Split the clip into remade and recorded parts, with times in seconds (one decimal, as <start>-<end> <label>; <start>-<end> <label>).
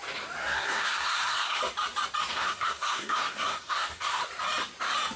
0.0-0.4 recorded; 0.4-1.6 remade; 1.6-2.3 recorded; 2.3-4.2 remade; 4.2-5.2 recorded